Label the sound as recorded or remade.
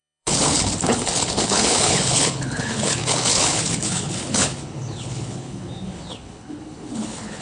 remade